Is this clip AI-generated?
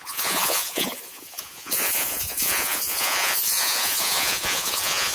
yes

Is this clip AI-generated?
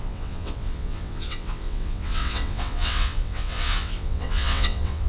yes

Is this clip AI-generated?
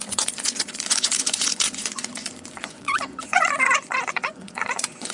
yes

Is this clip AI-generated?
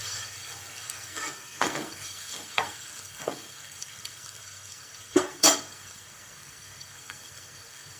yes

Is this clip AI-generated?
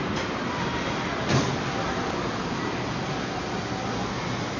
no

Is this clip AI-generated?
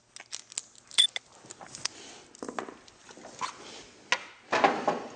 no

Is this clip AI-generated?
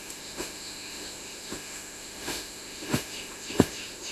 yes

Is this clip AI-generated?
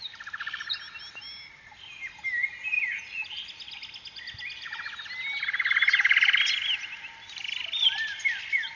no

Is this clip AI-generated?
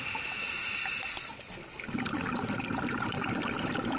no